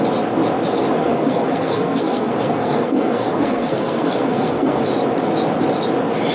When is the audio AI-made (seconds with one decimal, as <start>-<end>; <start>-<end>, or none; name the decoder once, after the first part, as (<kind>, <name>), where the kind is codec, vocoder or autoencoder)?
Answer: 1.0-4.8 (codec, SNAC)